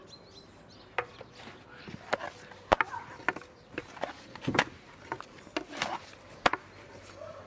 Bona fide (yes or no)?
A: yes